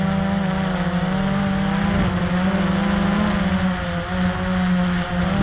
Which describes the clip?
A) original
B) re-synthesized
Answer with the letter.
A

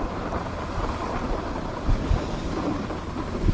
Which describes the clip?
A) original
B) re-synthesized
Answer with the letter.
A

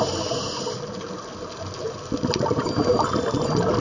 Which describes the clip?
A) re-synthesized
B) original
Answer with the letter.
B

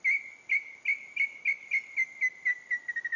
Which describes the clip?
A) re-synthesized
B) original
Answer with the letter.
B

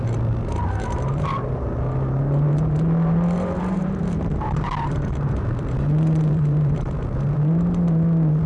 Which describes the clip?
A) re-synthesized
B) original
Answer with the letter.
A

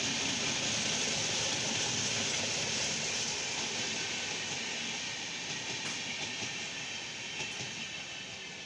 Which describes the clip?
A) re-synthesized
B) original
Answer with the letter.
B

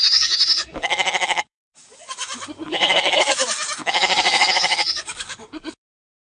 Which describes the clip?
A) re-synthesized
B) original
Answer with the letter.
A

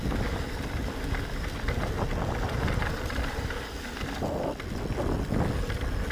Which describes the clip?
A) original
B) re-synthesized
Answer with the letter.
A